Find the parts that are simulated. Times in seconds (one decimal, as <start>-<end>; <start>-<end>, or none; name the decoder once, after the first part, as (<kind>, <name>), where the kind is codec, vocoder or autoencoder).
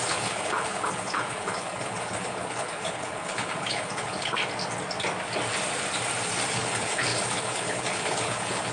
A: 0.0-4.4 (codec, HILCodec); 6.5-8.7